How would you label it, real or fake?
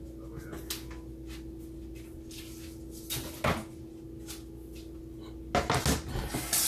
real